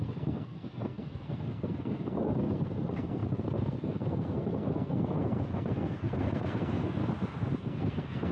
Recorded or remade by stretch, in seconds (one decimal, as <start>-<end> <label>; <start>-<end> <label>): 0.0-7.0 remade; 7.0-7.6 recorded; 7.6-8.3 remade